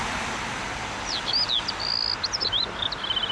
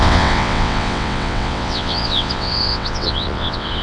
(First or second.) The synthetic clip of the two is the second